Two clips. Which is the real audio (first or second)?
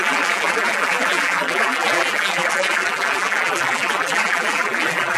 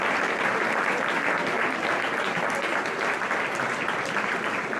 second